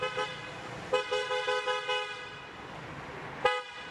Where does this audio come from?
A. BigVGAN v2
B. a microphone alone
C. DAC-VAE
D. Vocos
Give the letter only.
B